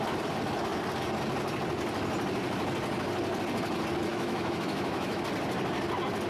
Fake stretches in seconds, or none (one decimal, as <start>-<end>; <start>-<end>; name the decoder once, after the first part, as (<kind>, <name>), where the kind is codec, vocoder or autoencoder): 4.1-5.2 (autoencoder, DAC-VAE)